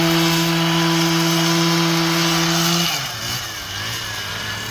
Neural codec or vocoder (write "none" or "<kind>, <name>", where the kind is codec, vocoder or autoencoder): none